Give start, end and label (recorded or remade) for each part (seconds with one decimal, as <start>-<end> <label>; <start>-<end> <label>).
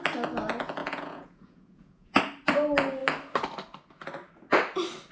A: 0.0-0.8 recorded; 0.8-2.2 remade; 2.2-5.1 recorded